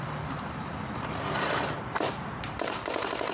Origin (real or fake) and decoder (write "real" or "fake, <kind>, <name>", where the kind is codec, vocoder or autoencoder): fake, vocoder, BigVGAN v2